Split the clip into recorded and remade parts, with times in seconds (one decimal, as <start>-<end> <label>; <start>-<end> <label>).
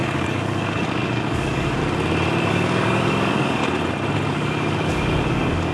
0.0-1.8 remade; 1.8-2.5 recorded; 2.5-3.6 remade; 3.6-4.3 recorded; 4.3-5.7 remade